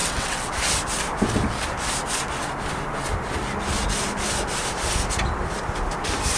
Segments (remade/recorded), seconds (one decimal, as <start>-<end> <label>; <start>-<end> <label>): 0.0-0.5 remade; 0.5-6.4 recorded